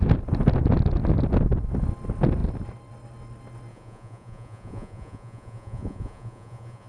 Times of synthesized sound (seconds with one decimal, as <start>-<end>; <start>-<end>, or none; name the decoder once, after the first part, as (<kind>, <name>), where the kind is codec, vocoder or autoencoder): 3.7-6.9 (vocoder, Vocos)

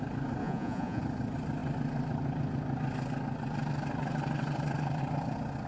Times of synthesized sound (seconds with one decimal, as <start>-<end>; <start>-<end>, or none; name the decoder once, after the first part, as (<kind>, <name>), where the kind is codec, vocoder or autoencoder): 0.4-1.0 (vocoder, Vocos)